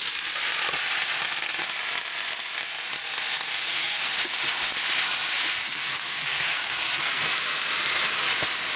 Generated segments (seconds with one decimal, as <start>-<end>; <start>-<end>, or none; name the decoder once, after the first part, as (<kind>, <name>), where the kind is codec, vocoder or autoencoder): 3.5-4.1 (codec, SNAC); 5.6-7.2